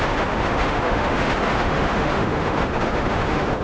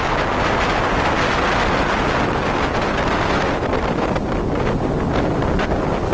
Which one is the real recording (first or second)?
second